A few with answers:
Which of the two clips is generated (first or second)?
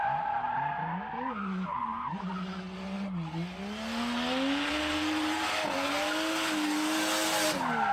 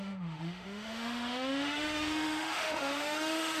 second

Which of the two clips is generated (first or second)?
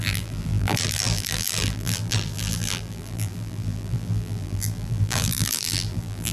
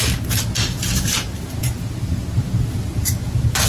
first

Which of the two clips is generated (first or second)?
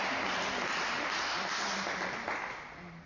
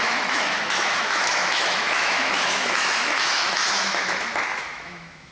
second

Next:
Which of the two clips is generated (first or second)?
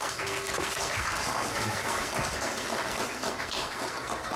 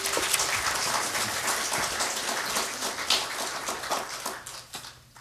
first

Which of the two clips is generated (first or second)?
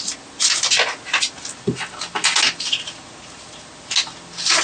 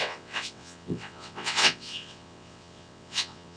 second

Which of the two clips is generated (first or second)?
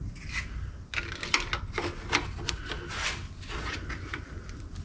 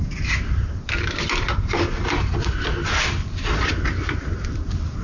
second